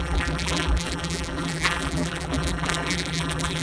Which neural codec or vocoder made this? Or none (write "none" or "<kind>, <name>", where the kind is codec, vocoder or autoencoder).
vocoder, BigVGAN v2